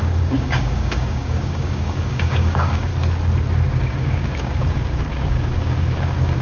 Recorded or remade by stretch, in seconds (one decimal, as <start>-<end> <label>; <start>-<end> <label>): 0.0-2.9 remade; 2.9-3.7 recorded; 3.7-6.4 remade